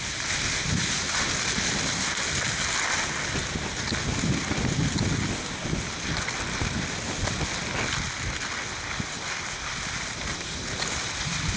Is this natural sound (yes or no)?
yes